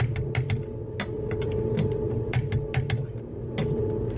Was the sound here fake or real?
real